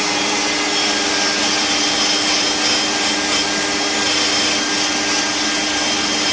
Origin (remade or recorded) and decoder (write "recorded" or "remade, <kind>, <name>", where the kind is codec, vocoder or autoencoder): recorded